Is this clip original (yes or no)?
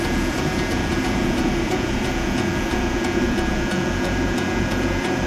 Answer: no